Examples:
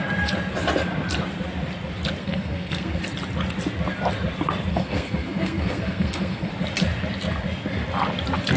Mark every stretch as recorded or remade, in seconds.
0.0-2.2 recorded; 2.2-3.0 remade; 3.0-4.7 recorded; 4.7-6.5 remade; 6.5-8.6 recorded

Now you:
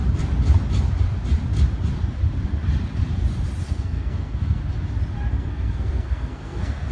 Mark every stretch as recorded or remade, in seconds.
0.0-3.7 recorded; 3.7-4.6 remade; 4.6-5.3 recorded; 5.3-6.9 remade

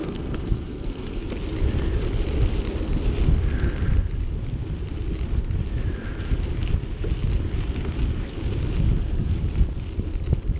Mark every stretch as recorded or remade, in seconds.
0.0-1.3 remade; 1.3-10.6 recorded

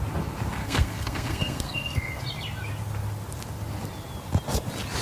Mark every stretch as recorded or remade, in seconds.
0.0-0.6 recorded; 0.6-2.2 remade; 2.2-5.0 recorded

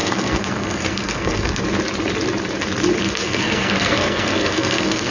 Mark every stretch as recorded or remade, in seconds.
0.0-1.6 remade; 1.6-3.1 recorded; 3.1-5.1 remade

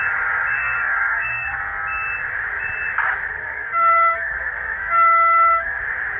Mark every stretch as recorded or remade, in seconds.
0.0-0.5 recorded; 0.5-1.6 remade; 1.6-3.3 recorded; 3.3-5.8 remade; 5.8-6.2 recorded